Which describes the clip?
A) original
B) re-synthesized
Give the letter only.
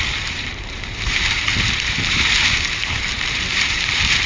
B